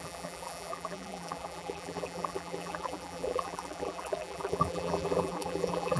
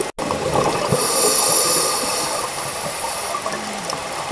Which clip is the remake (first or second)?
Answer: first